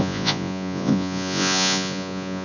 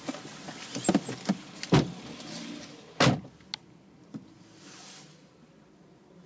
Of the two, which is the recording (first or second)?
second